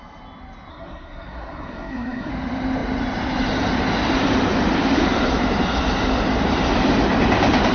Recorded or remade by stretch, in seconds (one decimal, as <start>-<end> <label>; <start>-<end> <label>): 0.0-0.7 recorded; 0.7-2.3 remade; 2.3-7.7 recorded